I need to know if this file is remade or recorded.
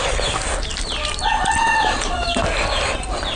recorded